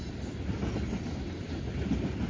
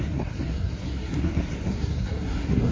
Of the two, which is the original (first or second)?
first